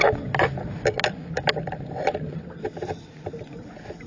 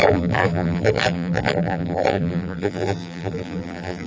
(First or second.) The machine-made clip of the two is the second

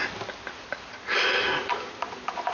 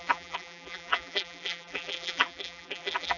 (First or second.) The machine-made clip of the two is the second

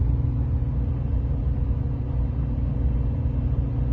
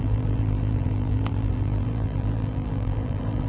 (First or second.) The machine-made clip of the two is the second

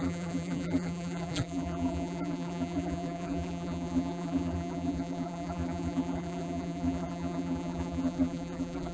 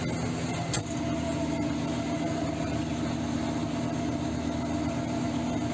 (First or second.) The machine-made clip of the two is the first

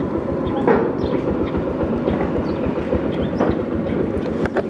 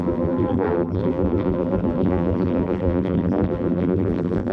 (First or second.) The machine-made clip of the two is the second